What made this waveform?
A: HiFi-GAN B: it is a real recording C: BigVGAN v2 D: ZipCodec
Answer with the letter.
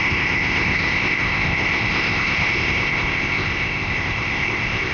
D